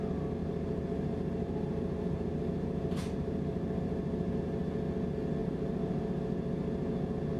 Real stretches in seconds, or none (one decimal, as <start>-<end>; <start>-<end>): 0.0-0.4; 4.4-5.4; 6.1-7.4